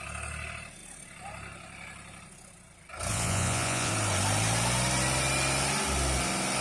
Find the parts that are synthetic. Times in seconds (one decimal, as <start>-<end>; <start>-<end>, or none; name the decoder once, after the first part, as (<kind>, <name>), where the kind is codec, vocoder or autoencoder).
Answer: 3.1-3.9 (vocoder, Vocos)